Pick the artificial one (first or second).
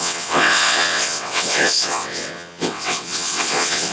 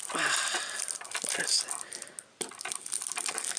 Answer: first